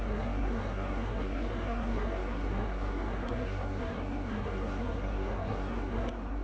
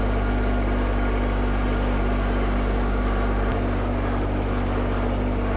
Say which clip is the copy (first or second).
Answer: first